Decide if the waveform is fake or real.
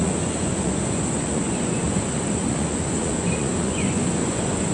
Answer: fake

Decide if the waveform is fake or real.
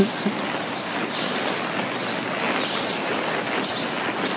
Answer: real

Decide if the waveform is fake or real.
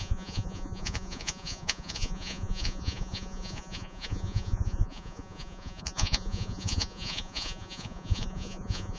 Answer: fake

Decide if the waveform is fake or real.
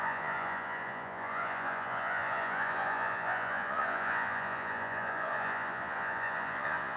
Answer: fake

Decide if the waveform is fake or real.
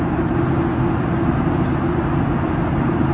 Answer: real